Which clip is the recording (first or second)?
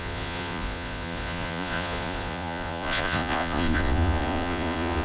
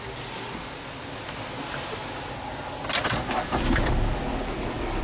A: second